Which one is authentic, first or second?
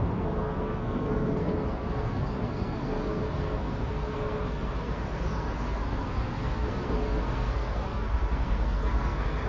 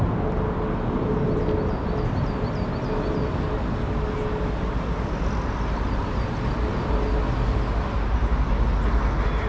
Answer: second